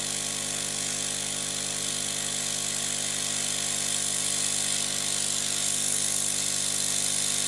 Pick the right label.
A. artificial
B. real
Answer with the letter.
B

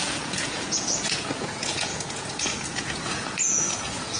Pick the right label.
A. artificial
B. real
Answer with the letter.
A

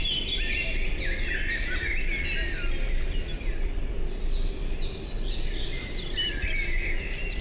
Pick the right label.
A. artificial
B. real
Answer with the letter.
B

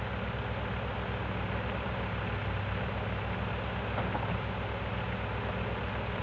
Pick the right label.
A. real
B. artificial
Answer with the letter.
A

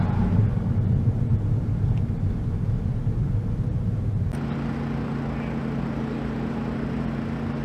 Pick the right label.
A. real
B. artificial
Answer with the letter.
A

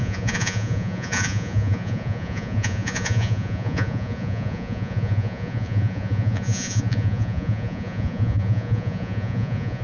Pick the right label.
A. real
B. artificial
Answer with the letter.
B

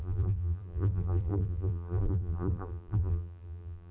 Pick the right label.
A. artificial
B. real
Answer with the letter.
A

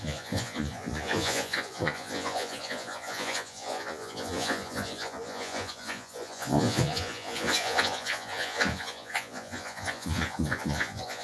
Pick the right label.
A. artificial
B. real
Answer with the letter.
A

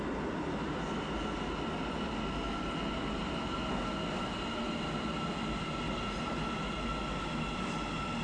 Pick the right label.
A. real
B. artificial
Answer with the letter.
A